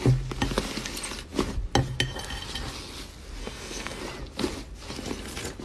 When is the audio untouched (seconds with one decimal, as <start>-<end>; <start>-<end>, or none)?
0.0-3.4; 4.0-5.6